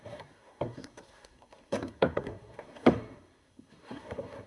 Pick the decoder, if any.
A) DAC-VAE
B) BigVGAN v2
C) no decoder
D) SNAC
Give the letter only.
D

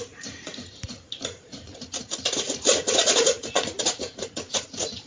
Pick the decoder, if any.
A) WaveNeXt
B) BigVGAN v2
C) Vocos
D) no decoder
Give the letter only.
C